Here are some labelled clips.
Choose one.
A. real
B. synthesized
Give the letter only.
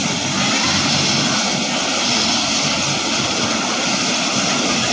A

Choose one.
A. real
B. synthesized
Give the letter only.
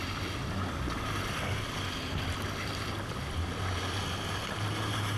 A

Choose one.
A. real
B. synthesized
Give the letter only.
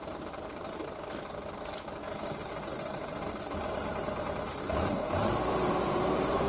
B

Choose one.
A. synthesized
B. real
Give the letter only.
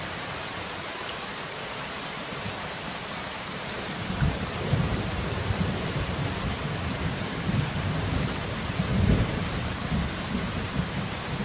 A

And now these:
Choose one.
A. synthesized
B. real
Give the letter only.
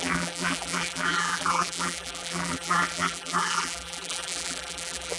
A